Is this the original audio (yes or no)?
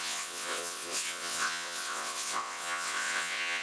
no